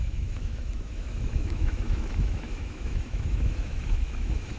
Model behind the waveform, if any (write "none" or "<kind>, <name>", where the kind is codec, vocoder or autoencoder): autoencoder, DAC-VAE